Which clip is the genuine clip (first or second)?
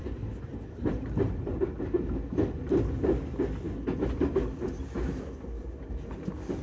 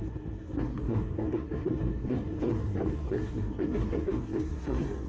first